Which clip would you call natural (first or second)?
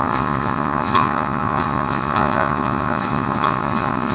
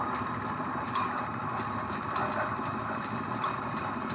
second